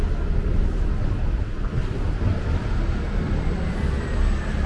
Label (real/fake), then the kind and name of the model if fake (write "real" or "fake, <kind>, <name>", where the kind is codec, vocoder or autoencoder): real